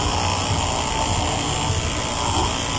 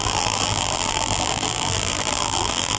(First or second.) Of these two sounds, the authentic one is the first